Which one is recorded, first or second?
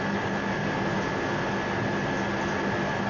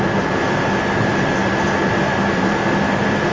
first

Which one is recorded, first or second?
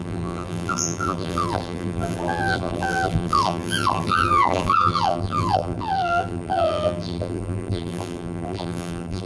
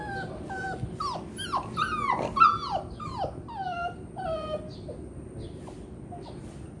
second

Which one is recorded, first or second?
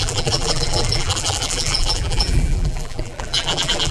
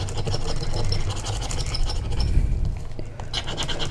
second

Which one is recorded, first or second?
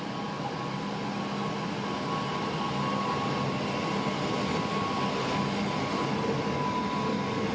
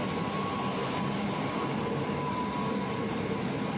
first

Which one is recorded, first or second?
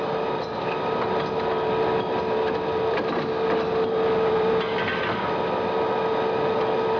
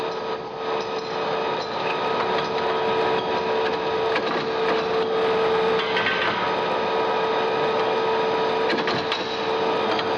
second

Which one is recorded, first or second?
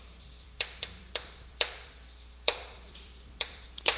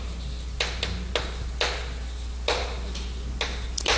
second